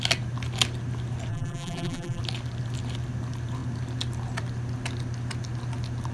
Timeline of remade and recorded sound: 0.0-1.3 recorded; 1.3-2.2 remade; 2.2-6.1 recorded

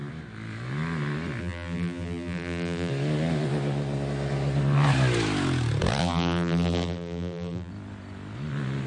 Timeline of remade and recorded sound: 0.0-1.4 recorded; 1.4-2.9 remade; 2.9-6.0 recorded; 6.0-7.7 remade; 7.7-8.9 recorded

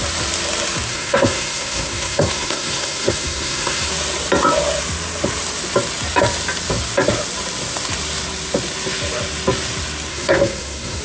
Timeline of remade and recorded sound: 0.0-0.9 recorded; 0.9-3.9 remade; 3.9-10.1 recorded; 10.1-11.0 remade

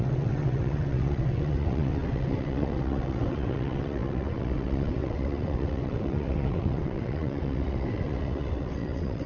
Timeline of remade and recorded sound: 0.0-9.3 remade

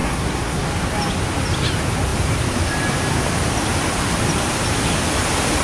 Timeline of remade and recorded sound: 0.0-0.6 remade; 0.6-5.6 recorded

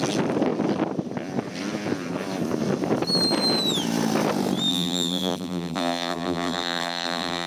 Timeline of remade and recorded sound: 0.0-4.7 recorded; 4.7-7.5 remade